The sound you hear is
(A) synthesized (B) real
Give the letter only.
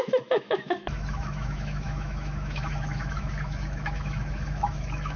A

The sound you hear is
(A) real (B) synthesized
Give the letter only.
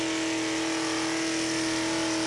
A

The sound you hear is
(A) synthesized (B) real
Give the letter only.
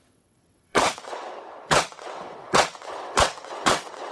A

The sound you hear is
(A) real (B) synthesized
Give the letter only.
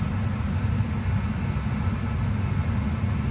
A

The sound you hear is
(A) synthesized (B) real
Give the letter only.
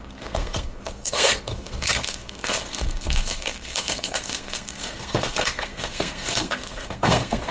A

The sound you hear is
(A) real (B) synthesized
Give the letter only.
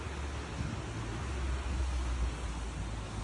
A